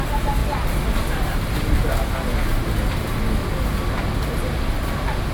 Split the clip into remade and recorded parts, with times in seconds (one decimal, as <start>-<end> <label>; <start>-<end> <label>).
0.0-5.3 recorded

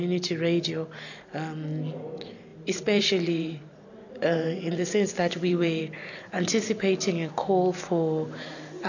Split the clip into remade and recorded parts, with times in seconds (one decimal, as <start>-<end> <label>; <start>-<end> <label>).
0.0-2.5 recorded; 2.5-5.8 remade; 5.8-8.9 recorded

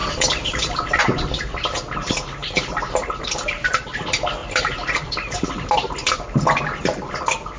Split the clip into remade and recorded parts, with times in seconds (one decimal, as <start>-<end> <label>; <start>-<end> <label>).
0.0-1.0 remade; 1.0-2.4 recorded; 2.4-3.8 remade; 3.8-4.4 recorded; 4.4-5.4 remade; 5.4-7.6 recorded

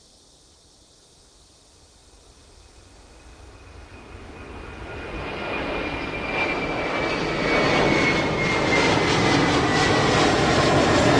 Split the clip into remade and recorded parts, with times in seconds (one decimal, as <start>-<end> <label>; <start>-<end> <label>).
0.0-9.7 recorded; 9.7-10.2 remade; 10.2-11.2 recorded